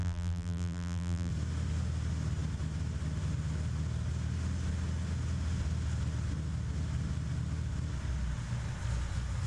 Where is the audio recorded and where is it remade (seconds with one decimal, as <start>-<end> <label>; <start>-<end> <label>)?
0.0-1.3 remade; 1.3-9.5 recorded